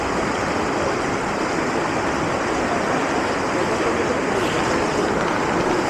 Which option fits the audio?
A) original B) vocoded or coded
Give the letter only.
A